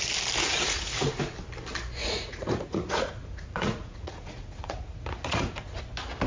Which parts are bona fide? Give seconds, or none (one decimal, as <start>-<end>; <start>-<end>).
0.0-0.4; 1.1-2.0; 5.8-6.3